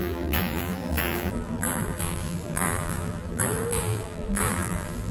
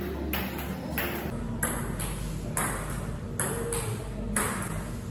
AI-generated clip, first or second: first